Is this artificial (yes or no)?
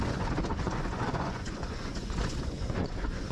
yes